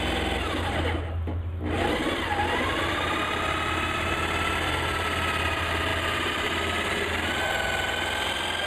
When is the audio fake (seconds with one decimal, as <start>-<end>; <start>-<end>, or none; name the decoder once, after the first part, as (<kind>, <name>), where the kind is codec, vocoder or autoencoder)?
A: 5.9-7.3 (vocoder, BigVGAN v2)

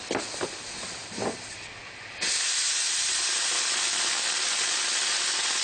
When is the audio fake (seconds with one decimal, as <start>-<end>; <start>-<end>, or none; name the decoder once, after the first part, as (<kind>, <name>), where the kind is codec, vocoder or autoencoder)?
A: none

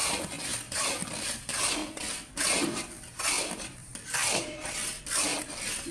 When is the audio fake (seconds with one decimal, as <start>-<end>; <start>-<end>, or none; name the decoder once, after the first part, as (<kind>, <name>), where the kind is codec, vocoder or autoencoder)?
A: 0.9-1.8 (vocoder, BigVGAN v2); 2.6-5.9